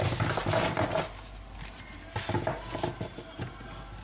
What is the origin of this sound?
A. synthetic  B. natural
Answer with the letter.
B